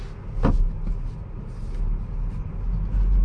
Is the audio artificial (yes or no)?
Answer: no